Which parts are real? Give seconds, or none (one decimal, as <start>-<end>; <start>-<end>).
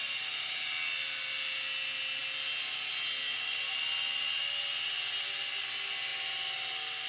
0.0-7.1